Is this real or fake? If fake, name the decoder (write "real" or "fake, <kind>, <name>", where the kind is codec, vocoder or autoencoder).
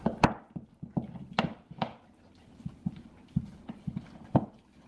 real